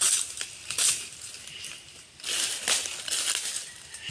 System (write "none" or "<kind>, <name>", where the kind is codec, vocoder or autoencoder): none